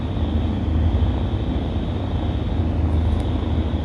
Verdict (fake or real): real